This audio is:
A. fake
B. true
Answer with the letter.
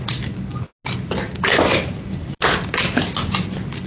B